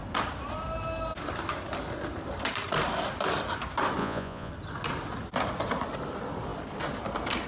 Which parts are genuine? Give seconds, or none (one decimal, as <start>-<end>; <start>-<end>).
0.0-4.0; 4.5-7.5